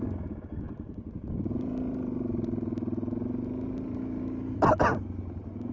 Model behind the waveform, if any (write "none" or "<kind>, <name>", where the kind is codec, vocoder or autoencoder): none